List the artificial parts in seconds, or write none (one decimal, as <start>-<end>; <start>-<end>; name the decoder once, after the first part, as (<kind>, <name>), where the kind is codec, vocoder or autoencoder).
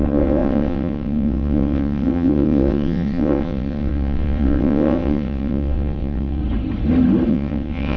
0.0-6.4 (vocoder, WaveNeXt); 7.3-8.0